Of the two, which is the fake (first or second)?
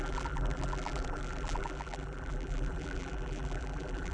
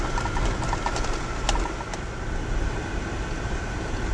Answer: first